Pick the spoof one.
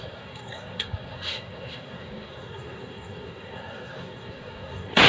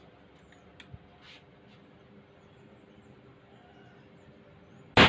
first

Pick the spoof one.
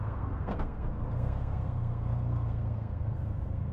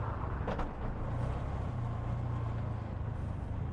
first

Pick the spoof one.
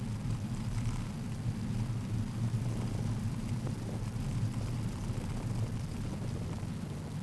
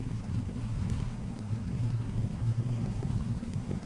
second